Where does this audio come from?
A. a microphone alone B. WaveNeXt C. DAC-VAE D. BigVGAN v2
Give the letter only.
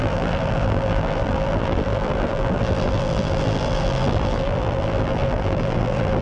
D